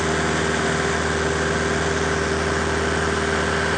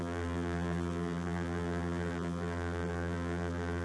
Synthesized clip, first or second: second